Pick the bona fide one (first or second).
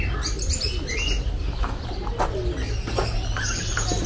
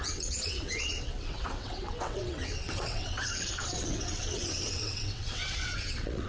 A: first